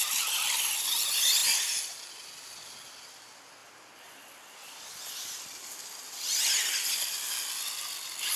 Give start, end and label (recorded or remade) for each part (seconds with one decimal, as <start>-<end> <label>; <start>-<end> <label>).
0.0-8.4 recorded